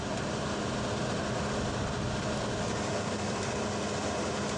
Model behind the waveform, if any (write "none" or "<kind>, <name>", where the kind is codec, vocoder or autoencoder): none